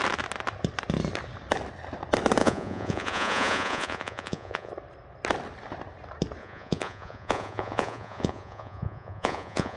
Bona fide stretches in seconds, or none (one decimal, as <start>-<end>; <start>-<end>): 0.0-2.4; 4.7-6.4